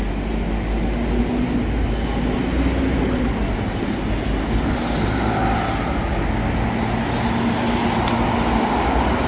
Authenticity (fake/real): real